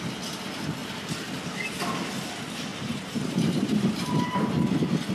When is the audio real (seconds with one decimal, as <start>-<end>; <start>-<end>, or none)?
0.0-2.7; 4.5-5.1